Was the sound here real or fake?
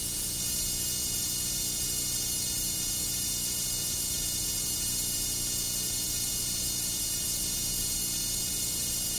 fake